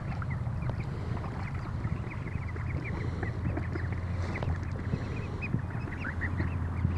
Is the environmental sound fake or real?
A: real